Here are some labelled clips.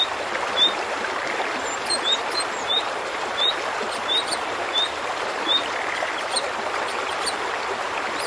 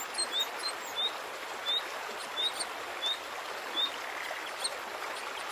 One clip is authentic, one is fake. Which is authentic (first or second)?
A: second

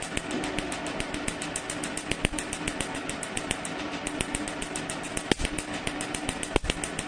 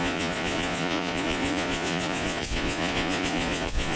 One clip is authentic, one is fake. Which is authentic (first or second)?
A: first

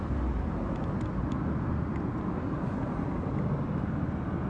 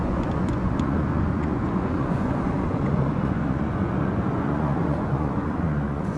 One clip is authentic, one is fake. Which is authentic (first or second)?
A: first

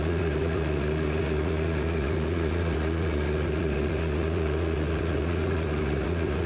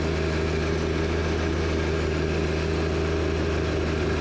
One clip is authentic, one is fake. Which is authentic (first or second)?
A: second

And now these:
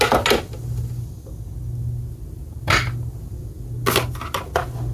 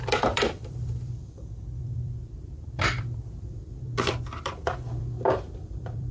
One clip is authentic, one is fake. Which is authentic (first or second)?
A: first